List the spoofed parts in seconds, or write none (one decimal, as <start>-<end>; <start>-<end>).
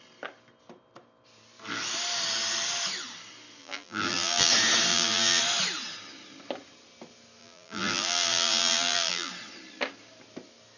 3.6-4.5; 4.9-5.4; 7.4-9.3